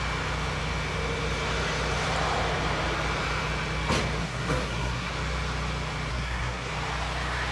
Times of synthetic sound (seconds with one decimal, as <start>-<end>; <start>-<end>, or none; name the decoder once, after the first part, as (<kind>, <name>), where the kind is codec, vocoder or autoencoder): 4.2-5.1 (codec, SNAC); 6.1-6.7